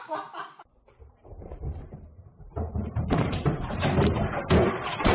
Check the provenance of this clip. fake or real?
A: fake